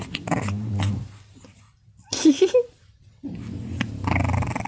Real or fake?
real